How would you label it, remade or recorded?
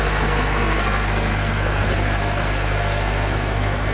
remade